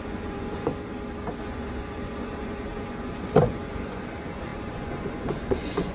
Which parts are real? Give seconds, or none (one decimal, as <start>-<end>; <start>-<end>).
0.7-1.4